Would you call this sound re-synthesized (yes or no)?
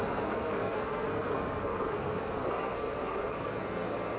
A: yes